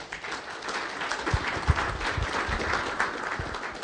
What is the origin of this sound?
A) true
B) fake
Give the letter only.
A